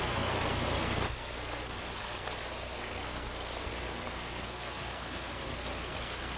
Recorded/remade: remade